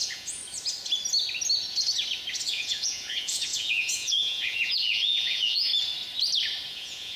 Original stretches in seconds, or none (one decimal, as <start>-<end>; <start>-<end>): 0.4-2.5; 5.7-6.7

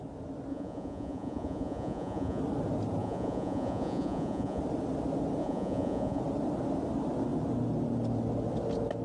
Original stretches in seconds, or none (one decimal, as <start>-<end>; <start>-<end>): 0.0-0.5; 2.4-3.0; 4.6-5.4; 6.2-9.0